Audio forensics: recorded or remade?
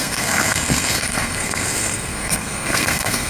remade